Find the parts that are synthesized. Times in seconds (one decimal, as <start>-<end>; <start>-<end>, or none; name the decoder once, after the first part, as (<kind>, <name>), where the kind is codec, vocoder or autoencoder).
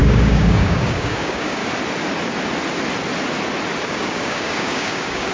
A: 0.0-1.6 (codec, DAC); 3.8-5.3